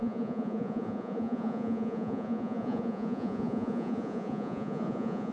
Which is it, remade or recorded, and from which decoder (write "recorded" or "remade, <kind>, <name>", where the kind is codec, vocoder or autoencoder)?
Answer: remade, vocoder, Vocos